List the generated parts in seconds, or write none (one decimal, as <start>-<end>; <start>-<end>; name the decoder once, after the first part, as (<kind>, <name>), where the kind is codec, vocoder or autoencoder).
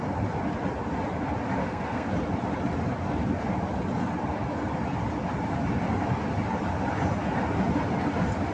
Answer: 1.6-2.1 (codec, SNAC)